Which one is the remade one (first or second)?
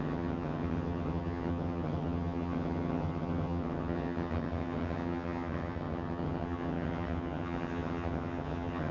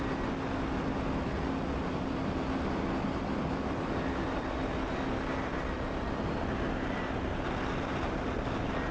first